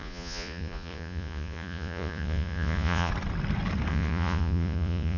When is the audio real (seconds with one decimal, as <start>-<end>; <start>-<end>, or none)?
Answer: 3.1-3.9